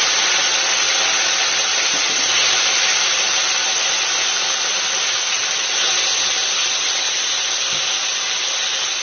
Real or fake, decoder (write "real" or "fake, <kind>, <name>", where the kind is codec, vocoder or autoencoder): real